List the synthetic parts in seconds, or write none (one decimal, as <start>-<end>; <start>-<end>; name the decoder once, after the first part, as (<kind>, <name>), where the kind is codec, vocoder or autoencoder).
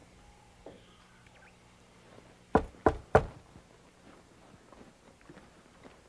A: none